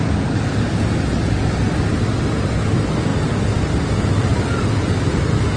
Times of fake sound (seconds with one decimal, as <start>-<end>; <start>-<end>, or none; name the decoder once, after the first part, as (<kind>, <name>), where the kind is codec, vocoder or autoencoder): 3.1-4.4 (vocoder, BigVGAN v2)